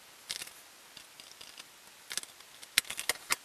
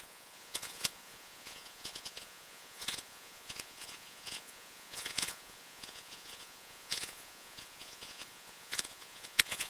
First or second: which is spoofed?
second